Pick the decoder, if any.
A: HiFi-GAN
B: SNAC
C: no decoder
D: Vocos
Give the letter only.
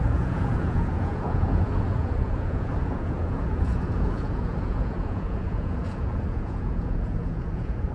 D